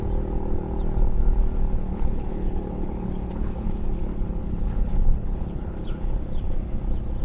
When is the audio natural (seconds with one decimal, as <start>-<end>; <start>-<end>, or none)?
0.0-1.9; 6.2-7.2

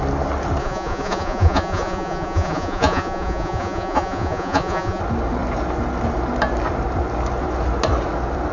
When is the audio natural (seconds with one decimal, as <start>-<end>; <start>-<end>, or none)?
0.0-0.6; 5.0-8.5

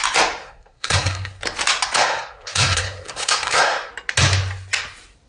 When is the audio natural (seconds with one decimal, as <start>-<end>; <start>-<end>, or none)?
0.0-0.4; 1.4-2.0; 3.9-5.3

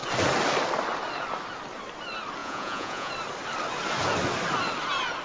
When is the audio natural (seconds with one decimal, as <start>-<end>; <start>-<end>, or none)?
0.0-2.4; 3.1-5.2